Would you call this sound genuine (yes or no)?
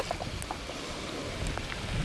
yes